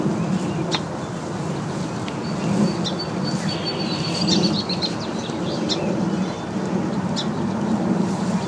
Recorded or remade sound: recorded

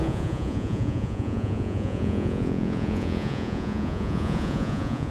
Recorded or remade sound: remade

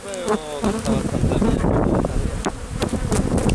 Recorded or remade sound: recorded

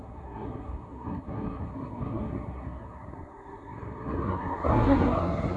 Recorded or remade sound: remade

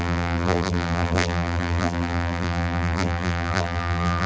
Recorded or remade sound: remade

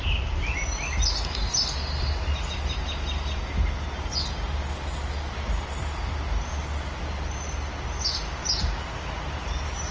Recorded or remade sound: recorded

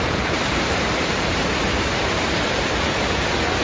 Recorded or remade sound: remade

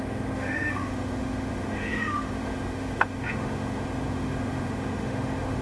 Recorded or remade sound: remade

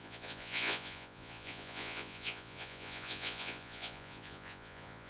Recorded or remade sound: remade